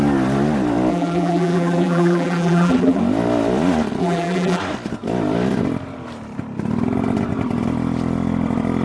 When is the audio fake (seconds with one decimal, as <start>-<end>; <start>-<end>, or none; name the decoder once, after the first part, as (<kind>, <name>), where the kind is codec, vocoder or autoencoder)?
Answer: 0.9-3.0 (vocoder, BigVGAN v2); 4.0-4.6